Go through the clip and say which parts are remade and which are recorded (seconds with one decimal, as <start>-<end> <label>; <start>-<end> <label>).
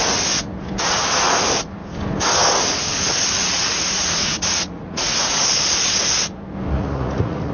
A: 0.0-3.4 recorded; 3.4-5.4 remade; 5.4-6.7 recorded; 6.7-7.5 remade